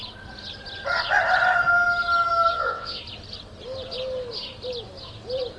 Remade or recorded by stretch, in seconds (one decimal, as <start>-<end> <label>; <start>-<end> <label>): 0.0-2.5 recorded; 2.5-3.0 remade; 3.0-5.6 recorded